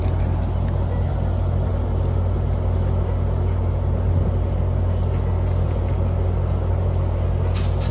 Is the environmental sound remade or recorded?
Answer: recorded